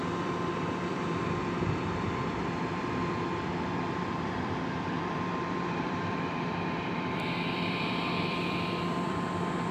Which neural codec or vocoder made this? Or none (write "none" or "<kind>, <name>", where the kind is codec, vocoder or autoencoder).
vocoder, BigVGAN v2